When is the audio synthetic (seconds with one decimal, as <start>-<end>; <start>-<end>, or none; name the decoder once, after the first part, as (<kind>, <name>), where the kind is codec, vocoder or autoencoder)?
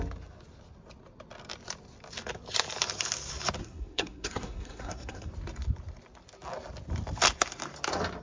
3.6-5.3 (codec, SNAC)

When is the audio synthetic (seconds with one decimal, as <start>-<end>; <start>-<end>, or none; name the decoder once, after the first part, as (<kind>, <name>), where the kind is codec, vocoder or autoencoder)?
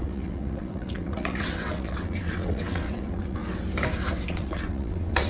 0.0-3.4 (vocoder, WaveNeXt); 4.3-5.3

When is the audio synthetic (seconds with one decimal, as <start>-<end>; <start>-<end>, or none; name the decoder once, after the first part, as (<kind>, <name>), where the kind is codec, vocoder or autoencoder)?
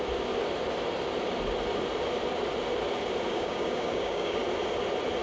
3.3-4.4 (codec, DAC)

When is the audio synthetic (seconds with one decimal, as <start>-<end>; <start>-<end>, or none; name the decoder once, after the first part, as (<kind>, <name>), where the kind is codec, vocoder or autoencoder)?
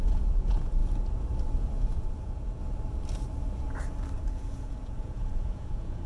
0.0-0.8 (vocoder, Vocos); 1.8-2.6; 4.2-6.1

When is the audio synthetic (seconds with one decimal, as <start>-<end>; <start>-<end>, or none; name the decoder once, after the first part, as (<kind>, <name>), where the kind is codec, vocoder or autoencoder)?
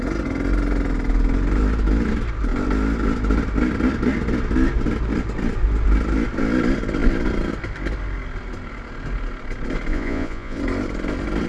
9.9-10.6 (vocoder, Vocos)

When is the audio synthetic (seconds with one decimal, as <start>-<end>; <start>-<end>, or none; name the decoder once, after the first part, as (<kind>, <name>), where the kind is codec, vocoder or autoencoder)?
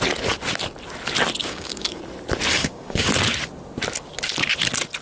1.4-2.0 (codec, DAC); 2.5-3.1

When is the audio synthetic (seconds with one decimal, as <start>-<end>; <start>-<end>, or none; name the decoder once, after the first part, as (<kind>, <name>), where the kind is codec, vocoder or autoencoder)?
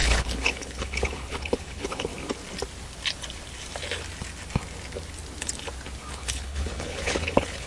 0.0-2.1 (codec, HILCodec); 6.1-7.7